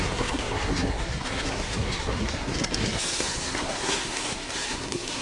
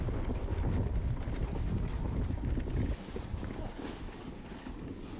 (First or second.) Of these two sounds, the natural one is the second